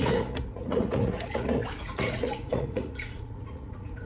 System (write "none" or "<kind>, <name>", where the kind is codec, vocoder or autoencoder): vocoder, Vocos